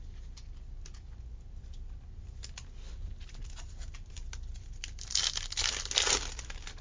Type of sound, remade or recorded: recorded